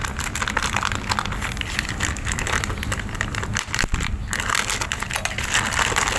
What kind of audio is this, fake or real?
real